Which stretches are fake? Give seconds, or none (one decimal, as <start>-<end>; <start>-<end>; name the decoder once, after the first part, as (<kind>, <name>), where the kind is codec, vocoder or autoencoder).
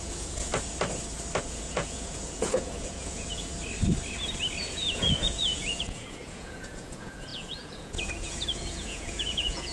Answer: 0.0-0.5 (vocoder, Vocos); 1.4-3.5; 4.6-9.7